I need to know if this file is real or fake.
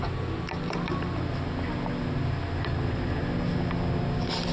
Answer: real